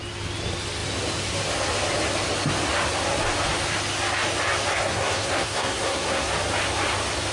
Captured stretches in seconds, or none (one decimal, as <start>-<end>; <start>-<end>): 0.0-4.7; 6.3-7.3